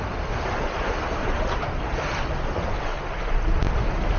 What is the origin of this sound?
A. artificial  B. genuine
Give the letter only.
B